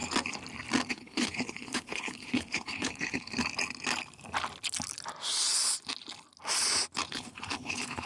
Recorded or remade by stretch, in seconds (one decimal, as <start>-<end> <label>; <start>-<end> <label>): 0.0-0.9 recorded; 0.9-3.3 remade; 3.3-7.1 recorded; 7.1-8.1 remade